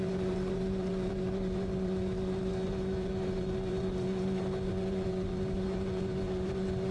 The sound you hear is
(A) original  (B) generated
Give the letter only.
B